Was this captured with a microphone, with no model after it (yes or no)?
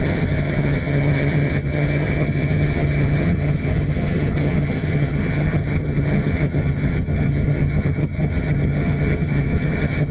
no